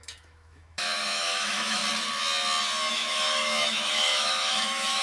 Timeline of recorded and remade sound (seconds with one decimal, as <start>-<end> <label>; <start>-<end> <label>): 0.0-1.8 remade; 1.8-2.9 recorded; 2.9-5.0 remade